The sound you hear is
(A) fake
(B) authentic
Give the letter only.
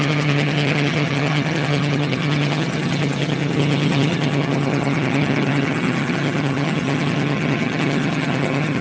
A